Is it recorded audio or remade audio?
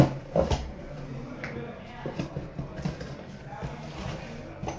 recorded